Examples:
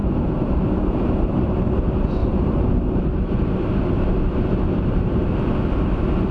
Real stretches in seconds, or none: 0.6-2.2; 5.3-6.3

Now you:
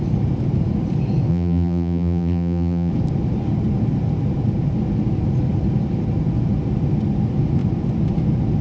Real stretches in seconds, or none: 0.0-1.3; 2.9-8.6